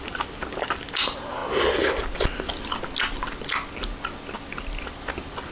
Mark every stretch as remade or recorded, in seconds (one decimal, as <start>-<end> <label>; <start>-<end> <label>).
0.0-5.5 recorded